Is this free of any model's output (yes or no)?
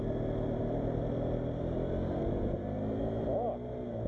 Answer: yes